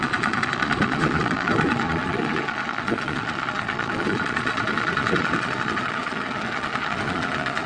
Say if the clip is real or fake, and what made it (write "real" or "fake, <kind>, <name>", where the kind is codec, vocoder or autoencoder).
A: fake, vocoder, Vocos